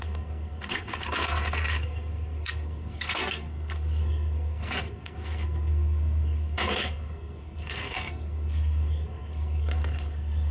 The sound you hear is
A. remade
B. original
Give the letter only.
A